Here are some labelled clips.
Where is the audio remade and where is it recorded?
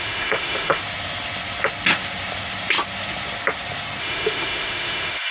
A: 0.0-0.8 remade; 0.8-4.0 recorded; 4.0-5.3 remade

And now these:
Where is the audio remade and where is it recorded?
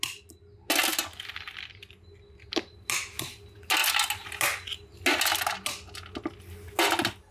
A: 0.0-7.3 recorded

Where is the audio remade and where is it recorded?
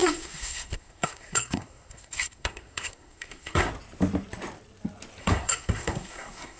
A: 0.0-3.7 remade; 3.7-5.2 recorded; 5.2-6.6 remade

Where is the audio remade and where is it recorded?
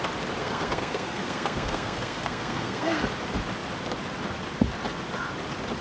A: 0.0-0.4 recorded; 0.4-3.0 remade; 3.0-5.8 recorded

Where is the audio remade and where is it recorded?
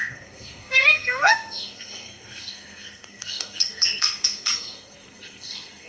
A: 0.0-5.9 remade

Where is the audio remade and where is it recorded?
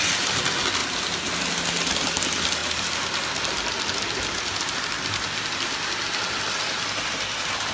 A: 0.0-7.7 recorded